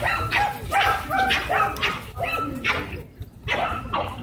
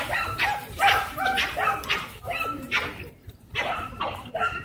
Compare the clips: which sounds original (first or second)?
first